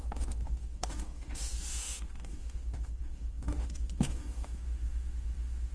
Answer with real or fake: fake